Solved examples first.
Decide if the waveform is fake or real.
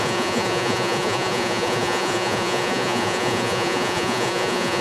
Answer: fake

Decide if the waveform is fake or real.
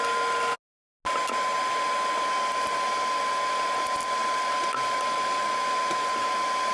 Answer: real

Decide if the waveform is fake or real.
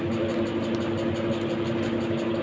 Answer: real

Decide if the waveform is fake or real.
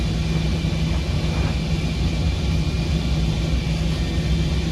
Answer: real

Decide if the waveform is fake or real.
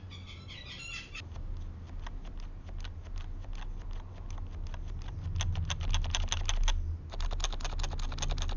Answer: real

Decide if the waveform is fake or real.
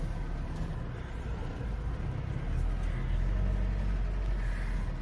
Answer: real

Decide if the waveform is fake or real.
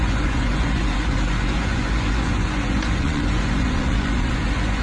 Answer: fake